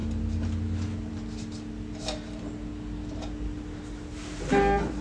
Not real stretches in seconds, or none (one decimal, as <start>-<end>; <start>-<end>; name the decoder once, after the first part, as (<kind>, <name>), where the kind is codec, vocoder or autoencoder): none